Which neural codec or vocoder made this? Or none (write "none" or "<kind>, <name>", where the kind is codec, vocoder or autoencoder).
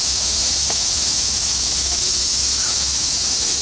autoencoder, DAC-VAE